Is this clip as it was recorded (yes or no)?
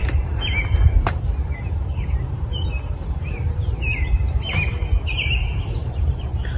no